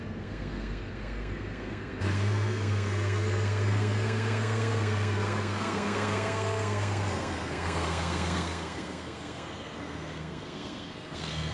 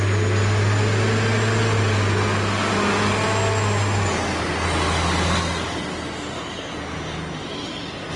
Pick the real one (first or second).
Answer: second